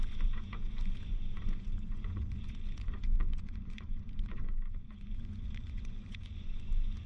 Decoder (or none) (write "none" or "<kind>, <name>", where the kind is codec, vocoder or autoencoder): vocoder, Vocos